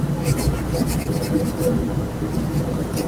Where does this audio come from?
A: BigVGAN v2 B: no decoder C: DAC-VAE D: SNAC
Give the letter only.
B